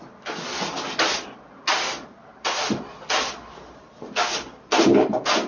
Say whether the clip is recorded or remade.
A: recorded